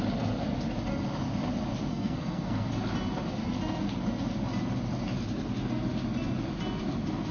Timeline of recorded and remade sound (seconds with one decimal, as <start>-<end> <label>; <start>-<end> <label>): 0.0-1.9 recorded; 1.9-2.7 remade; 2.7-7.3 recorded

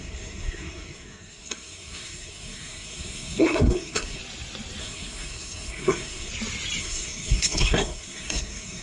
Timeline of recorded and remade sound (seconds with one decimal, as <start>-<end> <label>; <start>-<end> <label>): 0.0-4.2 remade; 4.2-4.8 recorded; 4.8-6.3 remade; 6.3-6.8 recorded; 6.8-8.8 remade

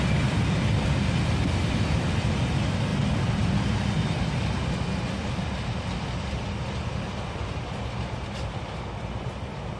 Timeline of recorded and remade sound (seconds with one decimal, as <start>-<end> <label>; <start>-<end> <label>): 0.0-9.8 recorded

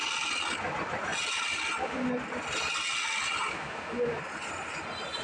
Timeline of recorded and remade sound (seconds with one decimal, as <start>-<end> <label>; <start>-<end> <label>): 0.0-5.2 recorded

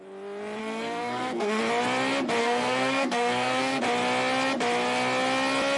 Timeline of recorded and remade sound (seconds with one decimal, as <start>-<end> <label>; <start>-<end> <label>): 0.0-0.6 recorded; 0.6-1.6 remade; 1.6-2.4 recorded; 2.4-3.8 remade; 3.8-5.8 recorded